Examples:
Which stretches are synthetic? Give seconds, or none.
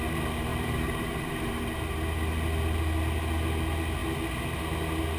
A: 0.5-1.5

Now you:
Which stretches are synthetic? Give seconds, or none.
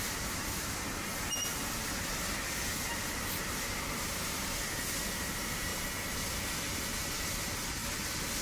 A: 0.0-1.1; 3.9-5.7; 6.8-7.8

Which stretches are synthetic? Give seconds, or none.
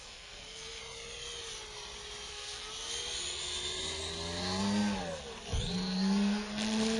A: 0.0-0.8; 2.3-2.7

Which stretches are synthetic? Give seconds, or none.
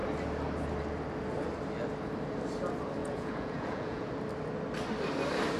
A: 3.0-4.1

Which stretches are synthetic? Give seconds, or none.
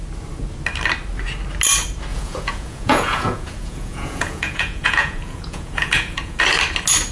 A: 2.1-6.4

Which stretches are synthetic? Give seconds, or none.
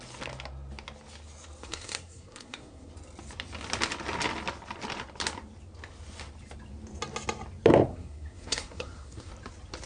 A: 1.6-2.9; 7.9-9.3